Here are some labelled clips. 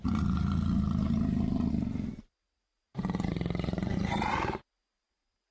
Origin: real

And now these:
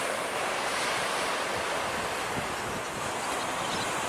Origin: real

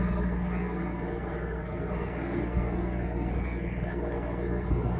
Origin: fake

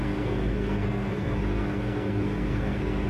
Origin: fake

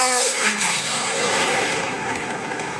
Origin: fake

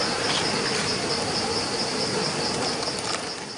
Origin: real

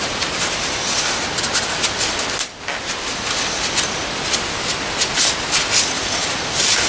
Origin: real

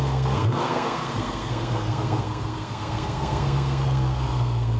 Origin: fake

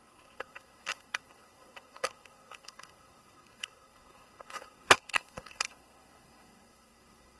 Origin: fake